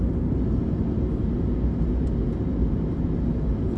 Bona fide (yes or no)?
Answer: yes